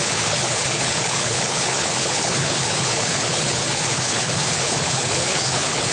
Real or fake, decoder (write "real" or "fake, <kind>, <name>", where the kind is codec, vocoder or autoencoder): fake, codec, HILCodec